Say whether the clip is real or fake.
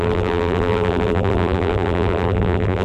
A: fake